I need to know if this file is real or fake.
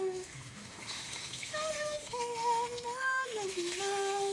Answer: fake